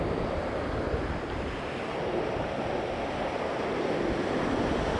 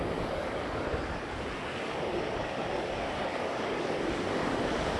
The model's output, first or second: second